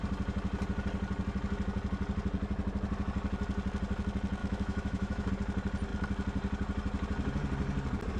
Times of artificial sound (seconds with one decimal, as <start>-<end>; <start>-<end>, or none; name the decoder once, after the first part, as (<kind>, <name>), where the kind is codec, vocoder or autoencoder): 4.4-5.3 (autoencoder, DAC-VAE)